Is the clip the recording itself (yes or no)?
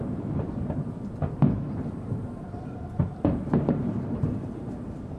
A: no